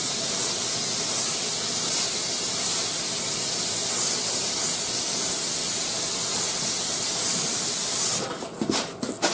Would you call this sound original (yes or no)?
yes